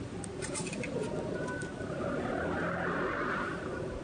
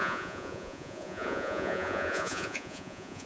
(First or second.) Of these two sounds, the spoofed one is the second